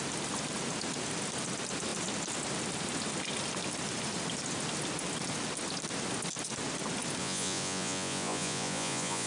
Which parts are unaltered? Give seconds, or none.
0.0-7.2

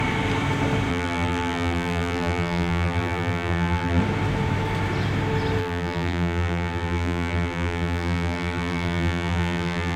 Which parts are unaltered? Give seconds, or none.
0.0-0.9; 4.0-5.6